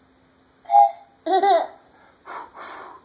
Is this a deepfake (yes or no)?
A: no